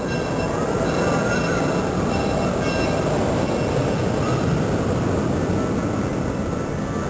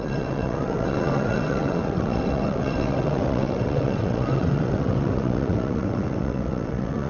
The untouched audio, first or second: first